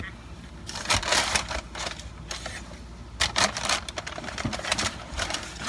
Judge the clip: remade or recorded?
recorded